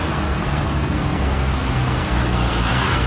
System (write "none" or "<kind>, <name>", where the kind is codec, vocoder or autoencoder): codec, SNAC